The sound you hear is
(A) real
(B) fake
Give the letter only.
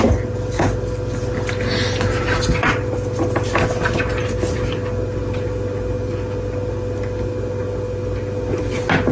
A